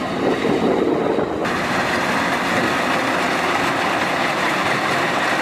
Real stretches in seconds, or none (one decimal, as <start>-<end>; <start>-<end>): 0.0-4.2; 5.0-5.4